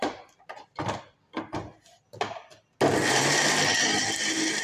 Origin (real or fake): real